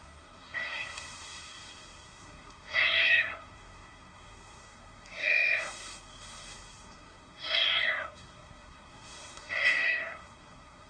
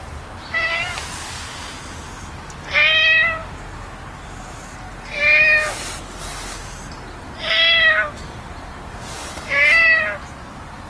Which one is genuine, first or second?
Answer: second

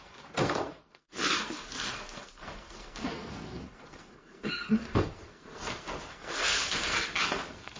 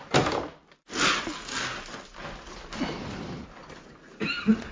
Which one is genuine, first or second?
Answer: second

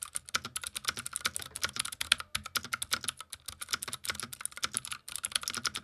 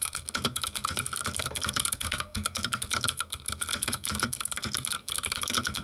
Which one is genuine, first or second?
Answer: first